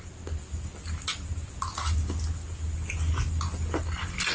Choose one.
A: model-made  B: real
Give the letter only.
B